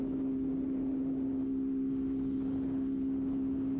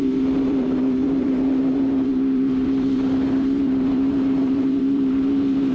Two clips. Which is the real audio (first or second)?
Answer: first